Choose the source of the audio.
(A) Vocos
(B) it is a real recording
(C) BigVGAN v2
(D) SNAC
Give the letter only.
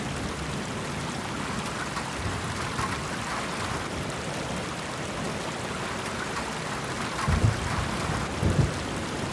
B